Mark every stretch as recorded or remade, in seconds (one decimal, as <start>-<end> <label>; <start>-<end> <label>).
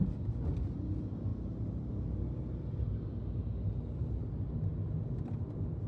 0.0-5.9 recorded